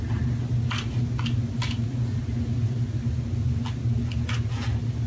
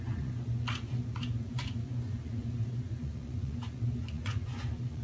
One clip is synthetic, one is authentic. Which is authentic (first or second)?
first